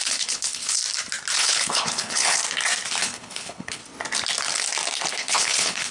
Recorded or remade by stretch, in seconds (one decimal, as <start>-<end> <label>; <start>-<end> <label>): 0.0-0.8 remade; 0.8-1.3 recorded; 1.3-2.4 remade; 2.4-3.0 recorded; 3.0-3.8 remade; 3.8-5.1 recorded; 5.1-5.9 remade